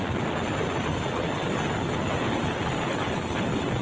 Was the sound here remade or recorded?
recorded